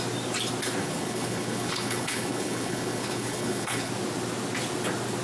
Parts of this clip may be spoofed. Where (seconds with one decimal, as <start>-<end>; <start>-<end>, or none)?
0.8-3.9